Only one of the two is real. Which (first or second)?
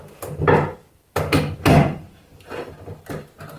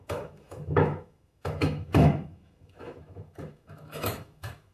first